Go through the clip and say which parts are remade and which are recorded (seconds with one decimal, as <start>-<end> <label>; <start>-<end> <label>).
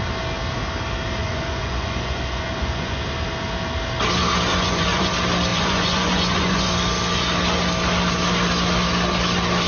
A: 0.0-1.2 recorded; 1.2-3.0 remade; 3.0-4.5 recorded; 4.5-5.1 remade; 5.1-5.5 recorded; 5.5-6.7 remade; 6.7-9.7 recorded